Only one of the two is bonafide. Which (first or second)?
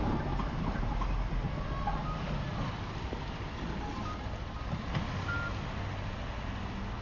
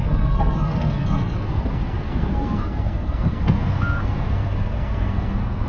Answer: first